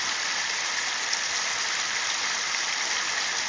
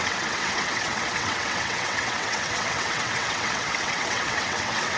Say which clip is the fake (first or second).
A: second